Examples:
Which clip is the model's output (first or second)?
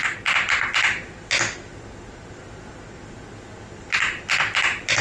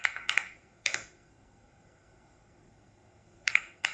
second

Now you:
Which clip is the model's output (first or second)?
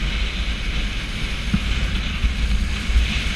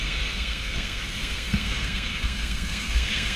second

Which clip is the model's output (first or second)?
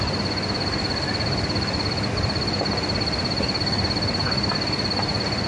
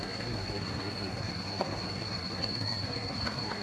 second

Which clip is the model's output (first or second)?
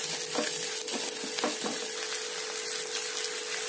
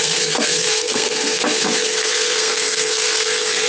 second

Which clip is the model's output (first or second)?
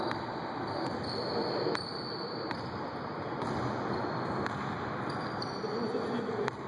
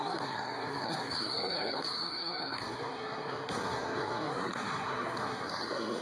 second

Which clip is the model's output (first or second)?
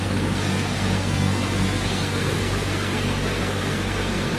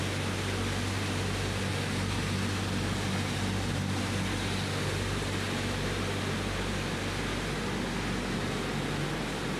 first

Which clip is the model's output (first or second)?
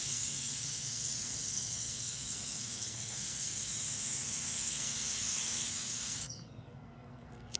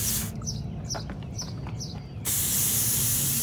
first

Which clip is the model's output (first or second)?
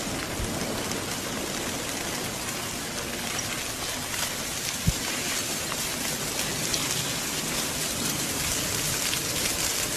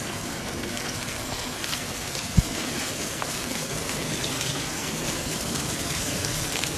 second